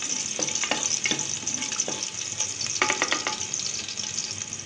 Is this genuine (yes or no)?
yes